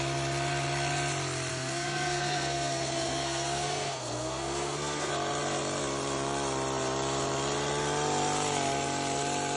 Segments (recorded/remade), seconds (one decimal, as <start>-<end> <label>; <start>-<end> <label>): 0.0-1.5 recorded; 1.5-5.1 remade; 5.1-9.6 recorded